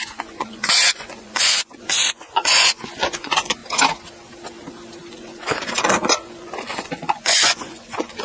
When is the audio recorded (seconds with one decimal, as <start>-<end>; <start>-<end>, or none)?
3.6-5.1